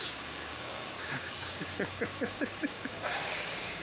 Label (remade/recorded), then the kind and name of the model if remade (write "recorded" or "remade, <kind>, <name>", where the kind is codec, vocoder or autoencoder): remade, codec, DAC